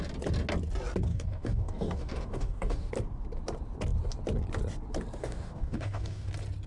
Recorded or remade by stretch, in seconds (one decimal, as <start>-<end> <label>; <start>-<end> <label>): 0.0-1.1 recorded; 1.1-2.9 remade; 2.9-5.2 recorded; 5.2-6.3 remade; 6.3-6.7 recorded